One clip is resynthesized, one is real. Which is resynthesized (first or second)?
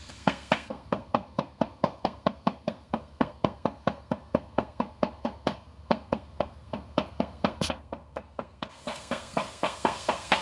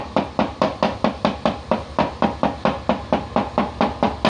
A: first